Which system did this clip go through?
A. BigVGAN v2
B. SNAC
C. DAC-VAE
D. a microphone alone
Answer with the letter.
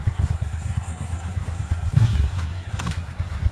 B